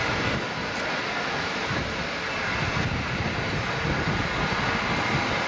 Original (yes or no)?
yes